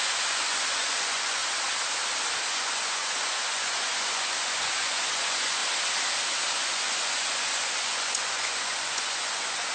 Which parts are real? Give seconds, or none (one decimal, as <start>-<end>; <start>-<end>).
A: 1.4-2.5; 5.6-6.5